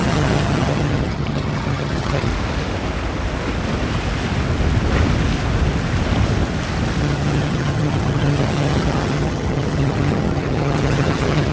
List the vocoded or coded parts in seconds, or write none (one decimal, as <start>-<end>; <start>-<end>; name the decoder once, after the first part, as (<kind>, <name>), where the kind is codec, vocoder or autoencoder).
0.0-2.3 (vocoder, HiFi-GAN); 7.0-11.5